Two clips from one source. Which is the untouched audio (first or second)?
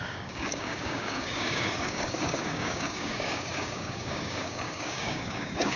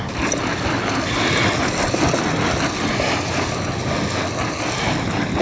second